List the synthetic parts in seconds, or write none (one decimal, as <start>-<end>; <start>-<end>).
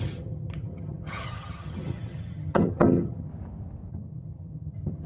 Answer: 0.0-3.3; 3.9-5.1